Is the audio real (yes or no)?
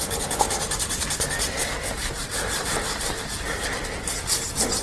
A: yes